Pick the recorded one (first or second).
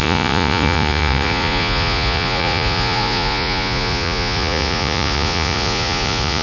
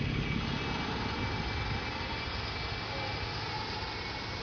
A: second